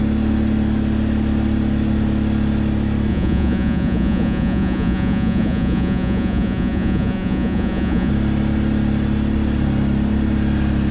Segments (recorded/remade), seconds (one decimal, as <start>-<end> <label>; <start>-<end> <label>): 0.0-3.1 recorded; 3.1-8.1 remade; 8.1-10.9 recorded